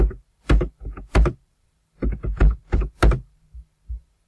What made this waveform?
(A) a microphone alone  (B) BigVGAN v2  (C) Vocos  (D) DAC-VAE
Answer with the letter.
B